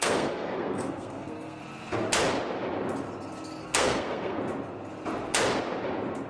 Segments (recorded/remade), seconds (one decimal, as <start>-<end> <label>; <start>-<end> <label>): 0.0-1.6 remade; 1.6-3.6 recorded; 3.6-4.4 remade; 4.4-6.3 recorded

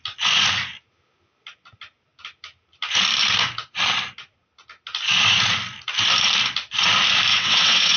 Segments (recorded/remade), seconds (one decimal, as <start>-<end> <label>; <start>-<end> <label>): 0.0-7.3 recorded; 7.3-8.0 remade

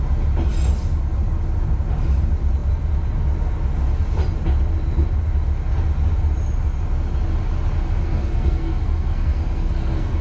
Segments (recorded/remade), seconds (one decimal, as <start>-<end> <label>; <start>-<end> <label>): 0.0-8.0 recorded; 8.0-10.2 remade

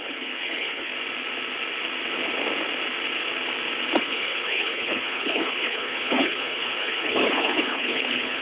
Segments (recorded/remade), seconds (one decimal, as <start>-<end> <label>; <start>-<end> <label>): 0.0-0.9 remade; 0.9-4.0 recorded; 4.0-8.4 remade

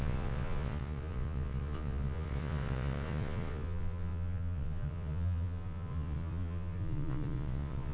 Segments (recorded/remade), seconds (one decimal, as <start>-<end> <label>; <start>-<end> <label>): 0.0-7.9 remade

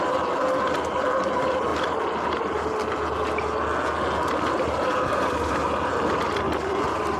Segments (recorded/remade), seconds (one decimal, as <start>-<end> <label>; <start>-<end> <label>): 0.0-7.2 recorded

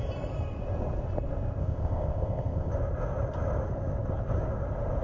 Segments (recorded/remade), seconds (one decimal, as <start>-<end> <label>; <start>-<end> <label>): 0.0-1.6 recorded; 1.6-2.7 remade; 2.7-5.0 recorded